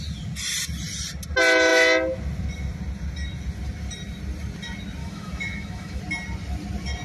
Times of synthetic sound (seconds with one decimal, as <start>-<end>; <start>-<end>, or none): 5.0-6.0